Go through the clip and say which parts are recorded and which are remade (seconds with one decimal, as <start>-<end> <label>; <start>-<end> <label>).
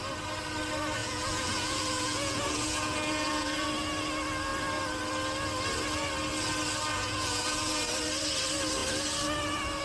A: 0.0-1.0 recorded; 1.0-3.7 remade; 3.7-6.9 recorded; 6.9-7.8 remade; 7.8-9.8 recorded